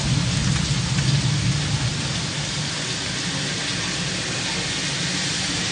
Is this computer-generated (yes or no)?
no